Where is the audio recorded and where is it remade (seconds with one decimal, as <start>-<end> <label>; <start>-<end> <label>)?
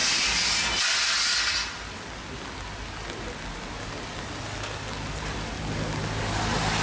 0.0-6.8 recorded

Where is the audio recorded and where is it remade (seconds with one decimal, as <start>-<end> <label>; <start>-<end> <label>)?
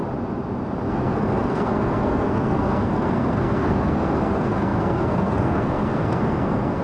0.0-0.9 recorded; 0.9-6.8 remade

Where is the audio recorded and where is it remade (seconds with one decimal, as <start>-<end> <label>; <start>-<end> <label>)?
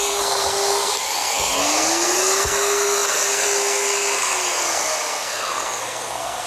0.0-6.5 remade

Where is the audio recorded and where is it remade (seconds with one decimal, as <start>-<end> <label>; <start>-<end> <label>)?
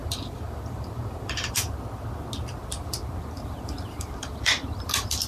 0.0-1.5 remade; 1.5-2.6 recorded; 2.6-5.3 remade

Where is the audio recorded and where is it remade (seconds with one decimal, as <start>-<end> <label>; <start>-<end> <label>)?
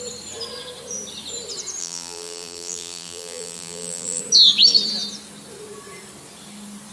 0.0-1.8 recorded; 1.8-4.2 remade; 4.2-6.9 recorded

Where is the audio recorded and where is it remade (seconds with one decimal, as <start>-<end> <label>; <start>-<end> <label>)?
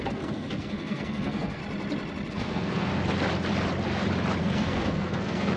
0.0-1.6 remade; 1.6-2.3 recorded; 2.3-2.9 remade; 2.9-4.4 recorded; 4.4-5.6 remade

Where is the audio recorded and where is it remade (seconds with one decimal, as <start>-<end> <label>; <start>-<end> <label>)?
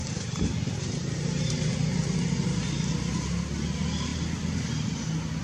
0.0-1.7 remade; 1.7-5.4 recorded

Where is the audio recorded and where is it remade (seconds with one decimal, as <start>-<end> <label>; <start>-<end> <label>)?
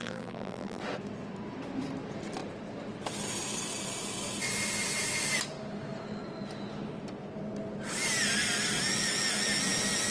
0.0-0.8 remade; 0.8-10.1 recorded